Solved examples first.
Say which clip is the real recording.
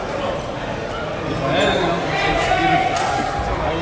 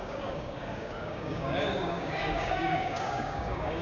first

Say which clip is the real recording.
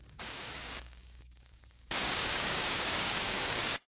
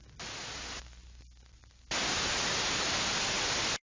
second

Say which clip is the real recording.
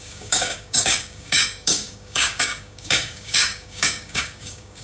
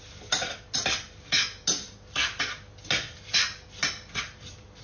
second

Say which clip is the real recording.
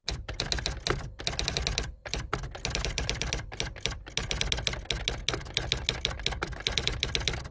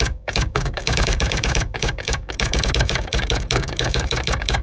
first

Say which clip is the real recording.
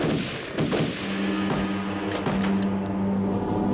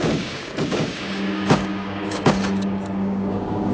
first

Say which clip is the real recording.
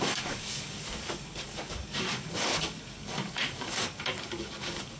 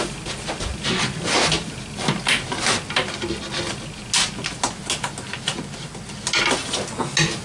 second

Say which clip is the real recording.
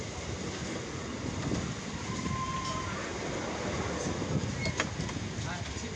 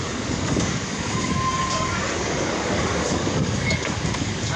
first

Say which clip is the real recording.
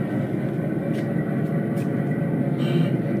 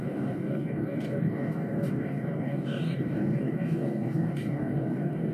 first